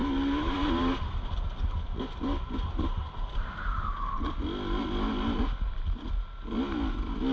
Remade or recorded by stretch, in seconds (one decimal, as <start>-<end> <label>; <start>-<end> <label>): 0.0-1.0 remade; 1.0-7.3 recorded